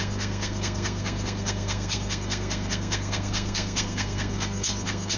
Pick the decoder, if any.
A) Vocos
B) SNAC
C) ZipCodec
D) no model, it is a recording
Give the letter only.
B